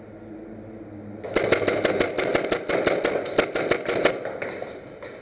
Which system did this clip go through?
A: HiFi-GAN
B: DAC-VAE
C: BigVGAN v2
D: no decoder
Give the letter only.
D